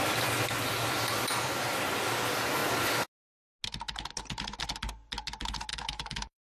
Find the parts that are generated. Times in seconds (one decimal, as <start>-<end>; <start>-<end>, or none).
5.7-6.5